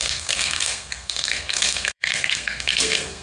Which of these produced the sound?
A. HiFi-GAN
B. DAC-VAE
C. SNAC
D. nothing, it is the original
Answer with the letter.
C